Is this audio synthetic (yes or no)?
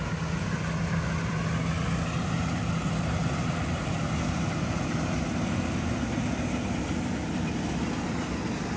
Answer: no